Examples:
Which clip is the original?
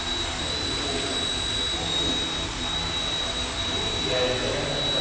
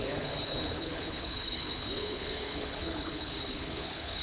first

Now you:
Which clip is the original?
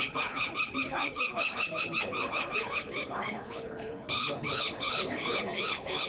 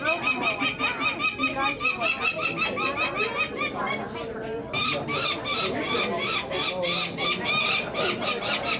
second